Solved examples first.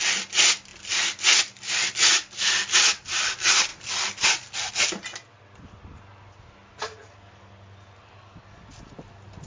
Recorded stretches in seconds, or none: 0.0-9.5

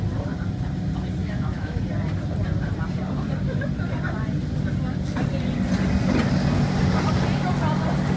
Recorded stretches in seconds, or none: 0.0-1.2; 1.8-8.2

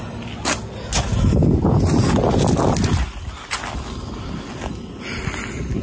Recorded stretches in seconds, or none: 0.0-5.8